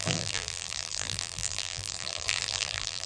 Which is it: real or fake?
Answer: fake